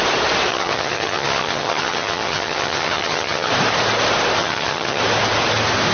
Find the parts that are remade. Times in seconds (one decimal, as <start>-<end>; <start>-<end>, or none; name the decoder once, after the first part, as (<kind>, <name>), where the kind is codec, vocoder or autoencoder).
0.5-3.5 (vocoder, HiFi-GAN); 4.4-5.0

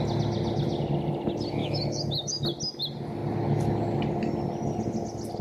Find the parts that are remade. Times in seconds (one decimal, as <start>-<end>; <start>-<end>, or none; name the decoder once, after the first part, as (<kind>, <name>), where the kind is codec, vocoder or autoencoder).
1.6-2.4 (autoencoder, DAC-VAE)

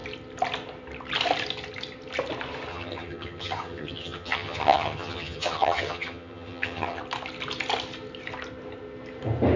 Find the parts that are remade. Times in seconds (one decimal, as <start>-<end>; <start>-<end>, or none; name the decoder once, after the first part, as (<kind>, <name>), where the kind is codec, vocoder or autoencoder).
2.7-7.0 (vocoder, HiFi-GAN)

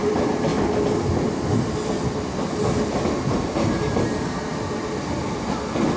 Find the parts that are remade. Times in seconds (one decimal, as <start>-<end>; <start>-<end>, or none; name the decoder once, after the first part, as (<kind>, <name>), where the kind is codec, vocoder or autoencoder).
0.0-0.5 (vocoder, BigVGAN v2); 3.3-4.5

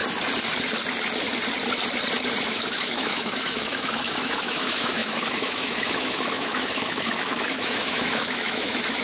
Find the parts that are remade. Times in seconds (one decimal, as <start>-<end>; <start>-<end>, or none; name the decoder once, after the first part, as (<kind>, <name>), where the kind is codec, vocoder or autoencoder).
2.4-9.0 (autoencoder, DAC-VAE)

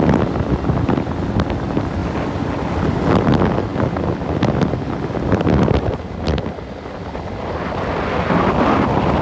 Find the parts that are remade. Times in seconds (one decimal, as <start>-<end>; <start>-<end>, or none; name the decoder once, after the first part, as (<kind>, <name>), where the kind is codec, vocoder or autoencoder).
none